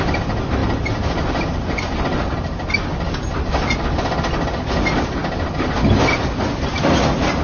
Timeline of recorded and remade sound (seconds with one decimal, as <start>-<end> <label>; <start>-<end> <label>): 0.0-7.4 recorded